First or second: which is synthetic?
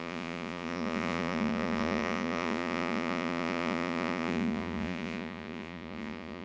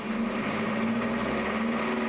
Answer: first